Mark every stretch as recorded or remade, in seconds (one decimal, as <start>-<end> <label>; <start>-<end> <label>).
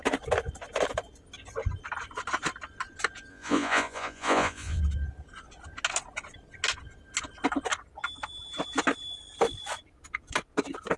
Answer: 0.0-3.3 recorded; 3.3-4.8 remade; 4.8-11.0 recorded